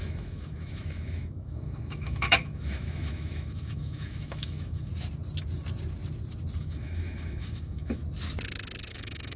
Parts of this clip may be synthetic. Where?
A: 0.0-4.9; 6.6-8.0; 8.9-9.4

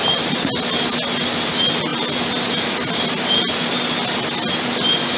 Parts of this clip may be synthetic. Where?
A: none

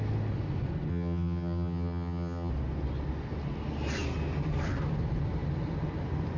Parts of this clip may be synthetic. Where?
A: 0.9-2.5

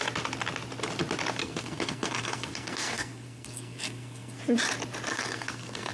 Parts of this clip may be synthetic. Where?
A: 1.4-4.4; 5.1-5.9

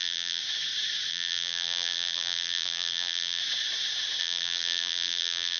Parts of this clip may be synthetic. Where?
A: 0.0-0.4; 1.1-3.4; 4.2-5.6